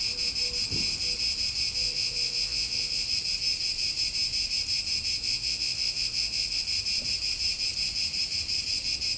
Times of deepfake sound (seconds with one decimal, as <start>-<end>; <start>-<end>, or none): 1.8-3.1; 5.2-6.6